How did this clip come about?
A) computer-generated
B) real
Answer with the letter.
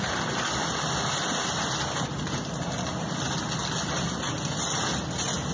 B